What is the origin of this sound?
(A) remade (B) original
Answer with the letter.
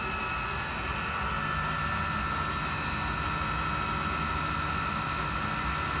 B